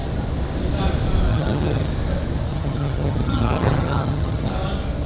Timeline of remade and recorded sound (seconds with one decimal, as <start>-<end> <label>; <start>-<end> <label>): 0.0-1.3 recorded; 1.3-1.9 remade; 1.9-2.5 recorded; 2.5-4.5 remade; 4.5-5.1 recorded